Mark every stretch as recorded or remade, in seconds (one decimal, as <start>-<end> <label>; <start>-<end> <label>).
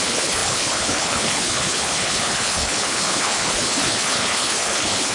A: 0.0-5.1 remade